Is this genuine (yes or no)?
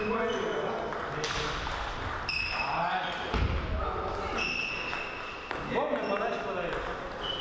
yes